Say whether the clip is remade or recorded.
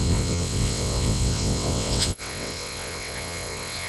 remade